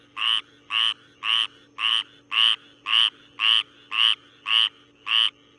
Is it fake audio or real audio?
real